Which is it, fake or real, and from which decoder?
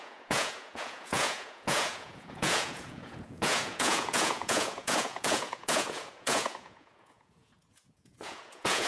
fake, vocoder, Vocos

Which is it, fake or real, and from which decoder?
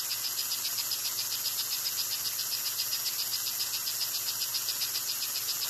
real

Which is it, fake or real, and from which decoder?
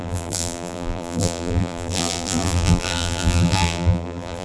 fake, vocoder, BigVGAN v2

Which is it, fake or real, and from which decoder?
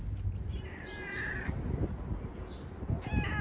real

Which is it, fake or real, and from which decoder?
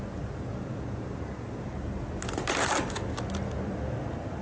real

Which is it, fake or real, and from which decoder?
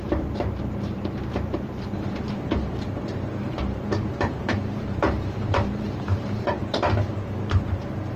fake, vocoder, BigVGAN v2